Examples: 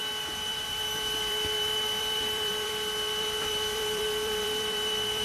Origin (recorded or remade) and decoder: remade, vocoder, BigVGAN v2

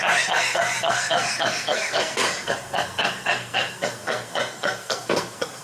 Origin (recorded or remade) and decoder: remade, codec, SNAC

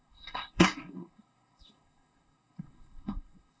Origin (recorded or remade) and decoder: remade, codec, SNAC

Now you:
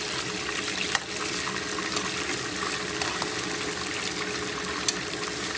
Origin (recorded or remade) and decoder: recorded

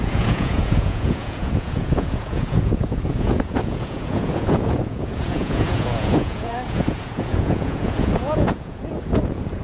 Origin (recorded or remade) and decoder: remade, vocoder, Vocos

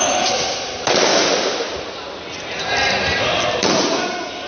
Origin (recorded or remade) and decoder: recorded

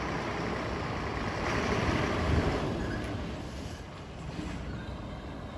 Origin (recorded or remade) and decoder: recorded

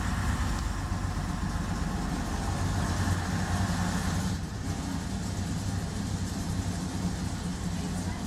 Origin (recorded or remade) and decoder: recorded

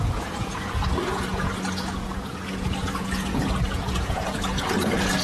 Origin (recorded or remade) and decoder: remade, vocoder, Vocos